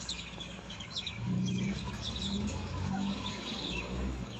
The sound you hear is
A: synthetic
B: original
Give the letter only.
A